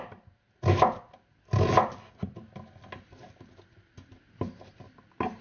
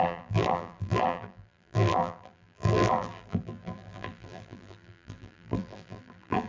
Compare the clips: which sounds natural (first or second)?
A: first